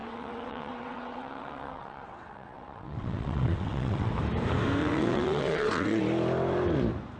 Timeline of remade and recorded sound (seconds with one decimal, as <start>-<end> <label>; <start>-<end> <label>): 0.0-4.1 remade; 4.1-4.8 recorded; 4.8-6.0 remade; 6.0-7.2 recorded